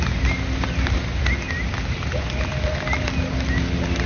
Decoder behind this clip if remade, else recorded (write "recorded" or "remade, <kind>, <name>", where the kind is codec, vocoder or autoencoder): recorded